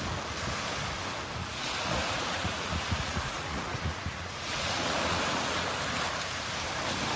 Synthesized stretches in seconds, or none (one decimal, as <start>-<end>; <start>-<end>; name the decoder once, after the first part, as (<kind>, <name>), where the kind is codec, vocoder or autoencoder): 1.4-5.7 (vocoder, Vocos)